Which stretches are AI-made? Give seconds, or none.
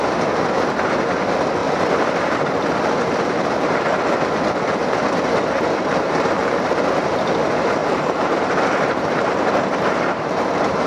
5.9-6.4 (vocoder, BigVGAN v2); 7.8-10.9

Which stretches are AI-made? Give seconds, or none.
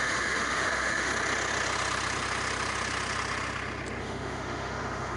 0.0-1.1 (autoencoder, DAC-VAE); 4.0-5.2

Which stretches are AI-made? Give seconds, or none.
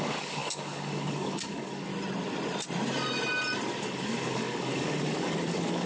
0.0-1.9 (codec, DAC); 3.8-5.9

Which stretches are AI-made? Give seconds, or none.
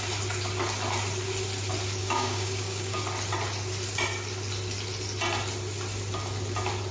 2.0-3.0 (codec, DAC)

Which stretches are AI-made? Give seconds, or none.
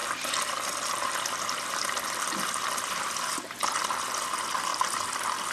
0.0-2.3 (vocoder, BigVGAN v2)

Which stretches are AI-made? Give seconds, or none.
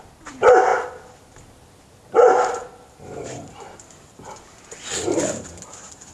none